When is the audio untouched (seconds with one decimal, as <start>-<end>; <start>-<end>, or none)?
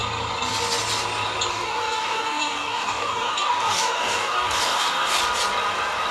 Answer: 0.0-1.5; 5.2-6.1